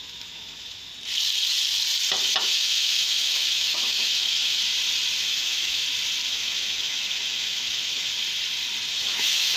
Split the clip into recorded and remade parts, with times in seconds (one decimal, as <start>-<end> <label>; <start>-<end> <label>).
0.0-0.9 remade; 0.9-2.4 recorded; 2.4-4.6 remade; 4.6-5.2 recorded; 5.2-5.8 remade; 5.8-6.3 recorded; 6.3-8.1 remade; 8.1-8.9 recorded; 8.9-9.6 remade